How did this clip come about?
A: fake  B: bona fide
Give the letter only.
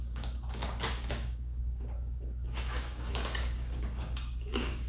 A